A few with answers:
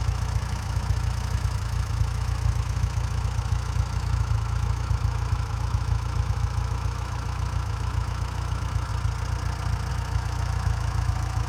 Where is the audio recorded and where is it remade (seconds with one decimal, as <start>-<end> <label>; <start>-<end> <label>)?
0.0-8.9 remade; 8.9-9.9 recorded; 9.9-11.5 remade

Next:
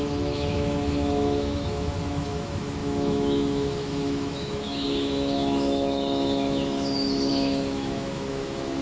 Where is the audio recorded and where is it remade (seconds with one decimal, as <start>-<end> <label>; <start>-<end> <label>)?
0.0-8.8 remade

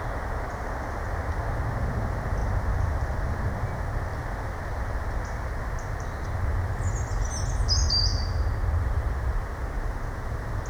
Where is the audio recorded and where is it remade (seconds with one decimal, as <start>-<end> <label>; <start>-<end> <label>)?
0.0-10.7 recorded

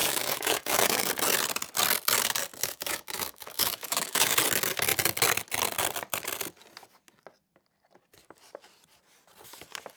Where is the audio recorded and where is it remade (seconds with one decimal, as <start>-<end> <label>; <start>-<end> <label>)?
0.0-1.1 remade; 1.1-2.6 recorded; 2.6-4.4 remade; 4.4-10.0 recorded